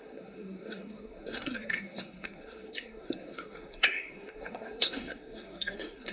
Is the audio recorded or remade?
remade